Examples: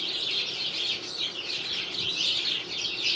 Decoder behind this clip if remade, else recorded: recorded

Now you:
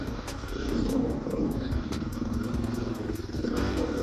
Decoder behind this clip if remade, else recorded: remade, codec, DAC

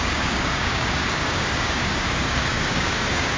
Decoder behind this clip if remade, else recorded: remade, codec, DAC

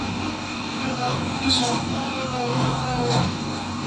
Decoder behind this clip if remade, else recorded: remade, codec, DAC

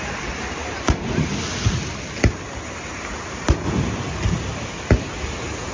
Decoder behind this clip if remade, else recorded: recorded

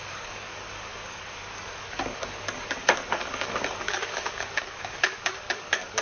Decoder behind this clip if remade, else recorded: remade, codec, DAC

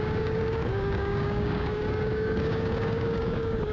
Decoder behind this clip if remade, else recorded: remade, codec, DAC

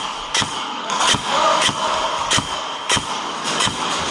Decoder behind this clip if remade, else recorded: remade, codec, DAC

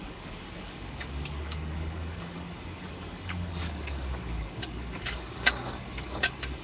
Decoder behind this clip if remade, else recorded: remade, codec, DAC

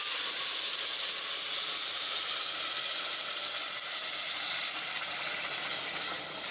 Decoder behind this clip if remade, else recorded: recorded